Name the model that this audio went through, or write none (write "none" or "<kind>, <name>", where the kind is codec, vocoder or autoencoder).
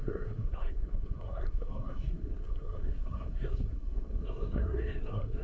codec, SNAC